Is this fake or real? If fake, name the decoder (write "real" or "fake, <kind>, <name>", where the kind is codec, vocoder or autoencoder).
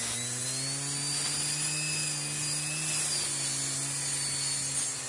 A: real